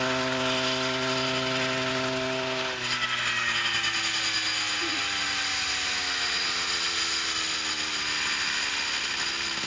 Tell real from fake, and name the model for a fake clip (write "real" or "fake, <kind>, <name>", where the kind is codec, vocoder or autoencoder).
real